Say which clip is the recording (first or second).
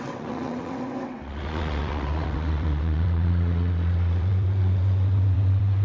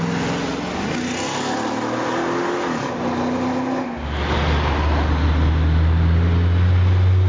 second